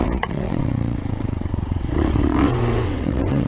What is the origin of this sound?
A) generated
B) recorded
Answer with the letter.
A